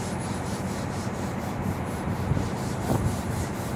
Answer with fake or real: fake